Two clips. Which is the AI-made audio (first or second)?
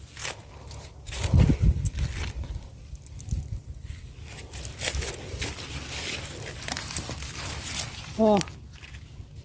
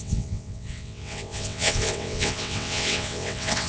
second